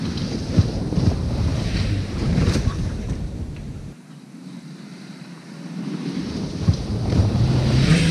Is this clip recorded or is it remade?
remade